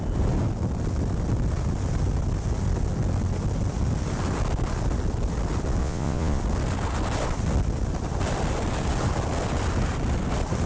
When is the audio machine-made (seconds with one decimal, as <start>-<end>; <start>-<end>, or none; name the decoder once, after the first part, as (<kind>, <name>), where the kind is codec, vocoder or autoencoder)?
5.8-6.4 (vocoder, Vocos)